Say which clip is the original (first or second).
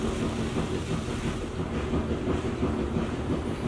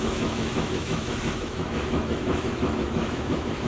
first